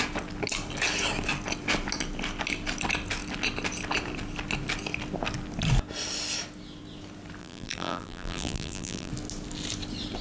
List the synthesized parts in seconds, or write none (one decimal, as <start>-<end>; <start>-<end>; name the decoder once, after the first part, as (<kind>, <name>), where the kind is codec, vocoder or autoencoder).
7.4-9.1 (vocoder, BigVGAN v2)